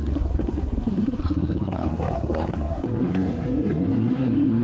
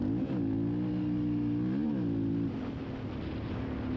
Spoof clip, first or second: first